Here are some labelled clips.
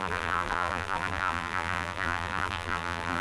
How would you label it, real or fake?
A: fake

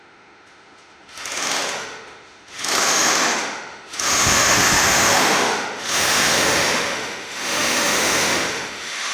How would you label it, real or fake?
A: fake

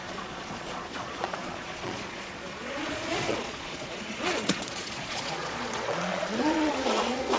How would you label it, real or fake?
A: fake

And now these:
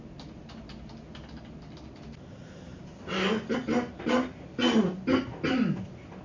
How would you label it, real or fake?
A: real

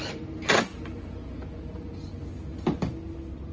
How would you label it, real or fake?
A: real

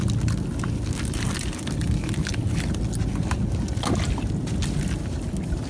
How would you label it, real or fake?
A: real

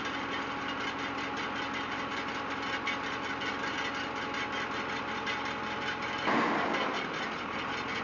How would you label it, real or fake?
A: real